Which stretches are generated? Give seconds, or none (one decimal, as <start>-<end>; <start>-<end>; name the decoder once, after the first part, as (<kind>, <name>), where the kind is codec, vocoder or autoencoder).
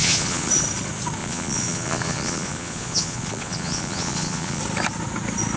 0.0-0.5 (vocoder, Vocos); 1.2-4.6